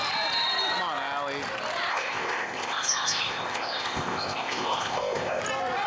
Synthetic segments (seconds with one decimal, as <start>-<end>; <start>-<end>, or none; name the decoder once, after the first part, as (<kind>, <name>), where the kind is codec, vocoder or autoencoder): 1.9-5.4 (codec, ZipCodec)